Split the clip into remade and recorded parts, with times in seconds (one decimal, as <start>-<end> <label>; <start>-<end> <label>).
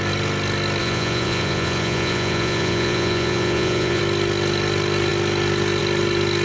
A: 0.0-0.8 recorded; 0.8-4.0 remade; 4.0-6.4 recorded